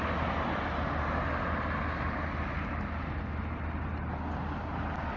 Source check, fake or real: real